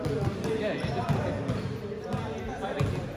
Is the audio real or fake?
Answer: real